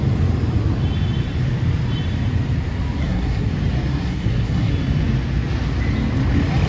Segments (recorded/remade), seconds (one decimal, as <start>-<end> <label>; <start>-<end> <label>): 0.0-3.0 recorded; 3.0-3.5 remade; 3.5-3.9 recorded; 3.9-4.7 remade; 4.7-6.7 recorded

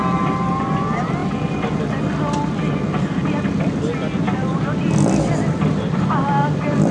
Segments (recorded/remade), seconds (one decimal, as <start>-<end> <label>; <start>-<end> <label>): 0.0-6.9 recorded

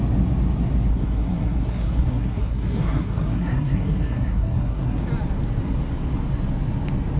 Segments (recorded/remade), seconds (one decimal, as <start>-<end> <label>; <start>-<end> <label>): 0.0-0.9 recorded; 0.9-5.0 remade; 5.0-7.2 recorded